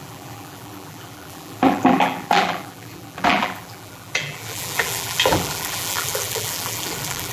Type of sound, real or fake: fake